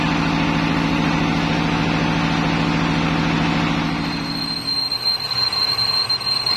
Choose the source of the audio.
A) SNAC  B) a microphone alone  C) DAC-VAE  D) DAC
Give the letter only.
B